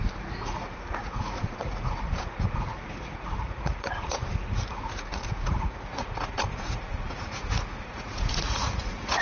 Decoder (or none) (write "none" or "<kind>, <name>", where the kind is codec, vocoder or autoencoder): vocoder, Vocos